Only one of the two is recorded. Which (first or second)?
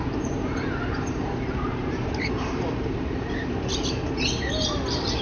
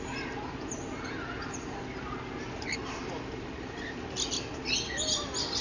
second